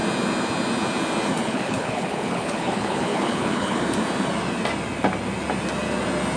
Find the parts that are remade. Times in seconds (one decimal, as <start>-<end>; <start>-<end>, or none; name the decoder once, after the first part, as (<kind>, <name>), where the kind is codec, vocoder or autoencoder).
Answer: 1.4-3.8 (codec, HILCodec)